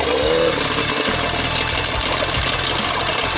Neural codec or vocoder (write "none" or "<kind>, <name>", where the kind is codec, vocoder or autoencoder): none